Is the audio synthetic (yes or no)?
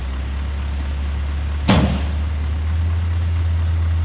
no